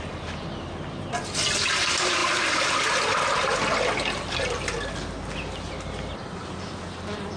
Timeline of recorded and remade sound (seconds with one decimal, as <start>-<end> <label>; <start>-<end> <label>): 0.0-7.4 recorded